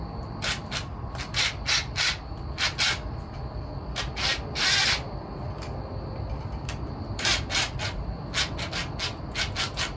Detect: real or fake real